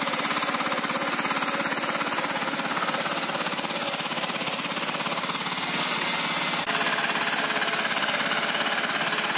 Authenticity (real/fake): real